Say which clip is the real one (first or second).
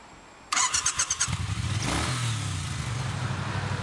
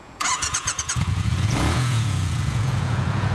first